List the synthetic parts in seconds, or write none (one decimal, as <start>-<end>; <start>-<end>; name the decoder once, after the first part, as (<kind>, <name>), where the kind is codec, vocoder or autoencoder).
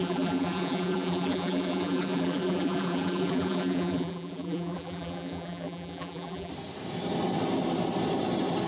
0.0-6.5 (vocoder, BigVGAN v2)